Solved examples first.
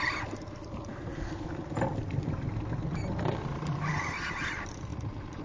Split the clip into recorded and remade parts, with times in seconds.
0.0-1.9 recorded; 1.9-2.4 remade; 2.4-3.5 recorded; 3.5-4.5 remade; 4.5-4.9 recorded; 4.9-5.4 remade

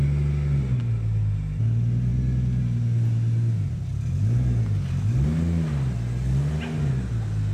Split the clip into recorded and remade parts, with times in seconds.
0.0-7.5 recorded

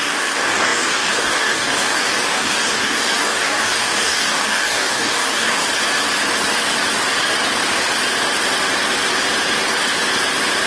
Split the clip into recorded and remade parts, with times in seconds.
0.0-5.6 remade; 5.6-10.7 recorded

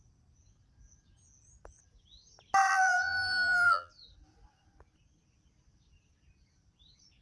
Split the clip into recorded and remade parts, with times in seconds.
0.0-2.7 recorded; 2.7-3.9 remade; 3.9-7.2 recorded